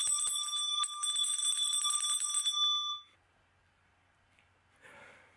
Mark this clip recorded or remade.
recorded